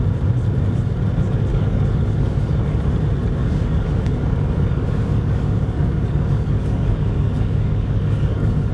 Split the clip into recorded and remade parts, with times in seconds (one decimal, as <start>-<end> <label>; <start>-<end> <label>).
0.0-1.5 recorded; 1.5-2.5 remade; 2.5-3.4 recorded; 3.4-8.7 remade